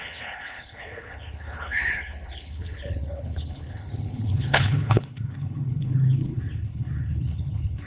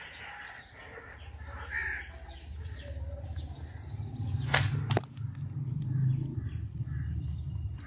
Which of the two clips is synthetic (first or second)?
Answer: first